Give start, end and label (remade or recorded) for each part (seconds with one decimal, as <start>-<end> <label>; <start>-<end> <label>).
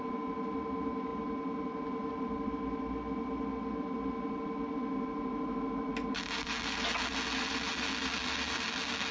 0.0-9.1 recorded